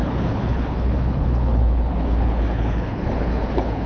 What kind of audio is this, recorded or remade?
remade